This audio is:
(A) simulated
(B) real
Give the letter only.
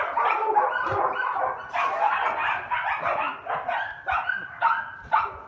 B